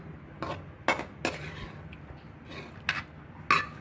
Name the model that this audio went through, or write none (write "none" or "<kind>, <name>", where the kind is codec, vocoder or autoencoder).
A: none